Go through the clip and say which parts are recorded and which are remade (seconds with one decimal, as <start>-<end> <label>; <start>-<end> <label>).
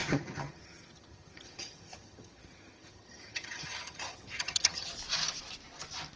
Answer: 0.0-4.9 remade; 4.9-6.2 recorded